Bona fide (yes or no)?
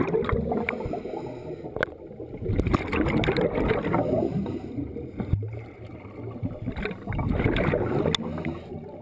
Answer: yes